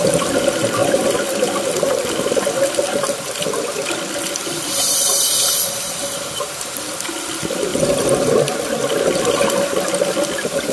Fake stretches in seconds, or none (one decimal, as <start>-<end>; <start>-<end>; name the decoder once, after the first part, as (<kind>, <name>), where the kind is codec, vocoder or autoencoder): 0.0-7.7 (vocoder, BigVGAN v2); 9.2-10.7